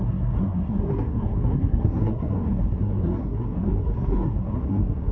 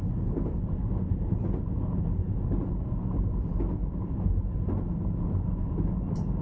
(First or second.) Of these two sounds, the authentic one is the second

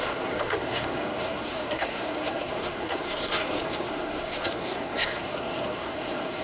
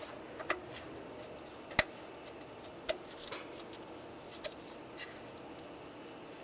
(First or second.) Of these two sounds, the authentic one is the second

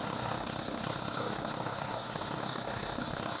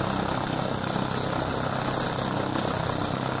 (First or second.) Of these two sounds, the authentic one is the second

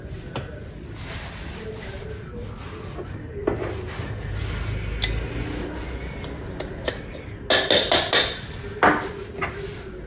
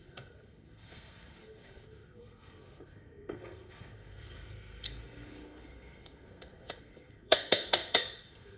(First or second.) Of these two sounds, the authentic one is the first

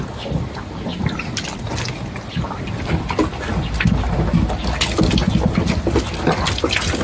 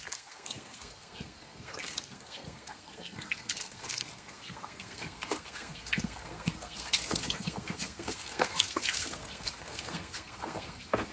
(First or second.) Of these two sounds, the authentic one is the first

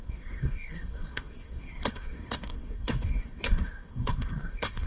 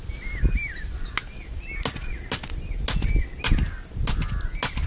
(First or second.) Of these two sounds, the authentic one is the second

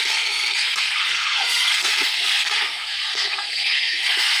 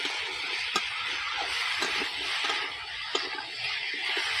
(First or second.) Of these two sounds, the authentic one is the second